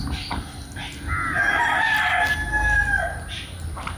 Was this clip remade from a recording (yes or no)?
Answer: no